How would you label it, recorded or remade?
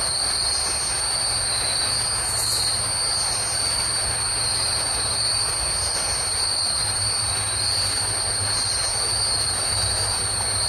recorded